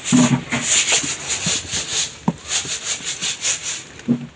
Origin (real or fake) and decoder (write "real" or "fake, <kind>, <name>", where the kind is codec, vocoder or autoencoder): real